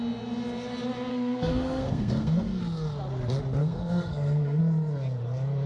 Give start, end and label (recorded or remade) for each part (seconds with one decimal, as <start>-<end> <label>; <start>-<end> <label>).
0.0-1.1 recorded; 1.1-2.6 remade; 2.6-3.6 recorded; 3.6-4.6 remade; 4.6-5.7 recorded